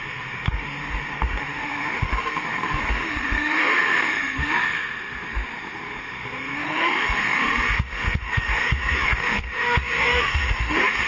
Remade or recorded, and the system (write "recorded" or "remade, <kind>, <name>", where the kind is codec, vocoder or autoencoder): remade, autoencoder, DAC-VAE